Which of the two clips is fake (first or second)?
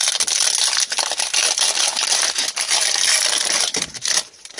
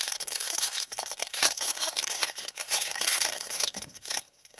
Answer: second